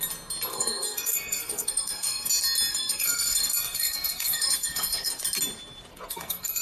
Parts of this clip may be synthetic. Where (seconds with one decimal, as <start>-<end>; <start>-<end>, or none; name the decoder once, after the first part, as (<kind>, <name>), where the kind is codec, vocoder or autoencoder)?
0.5-2.3 (codec, SNAC); 2.7-5.2; 5.9-6.6